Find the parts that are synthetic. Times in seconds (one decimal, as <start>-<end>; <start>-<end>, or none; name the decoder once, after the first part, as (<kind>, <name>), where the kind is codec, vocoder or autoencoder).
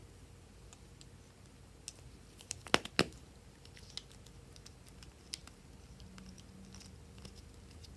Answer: none